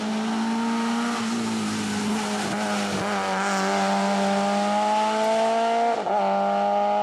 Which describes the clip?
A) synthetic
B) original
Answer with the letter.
B